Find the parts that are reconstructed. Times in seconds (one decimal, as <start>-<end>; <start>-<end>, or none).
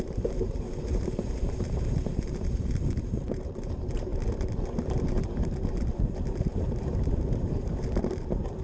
0.0-4.1; 5.1-8.6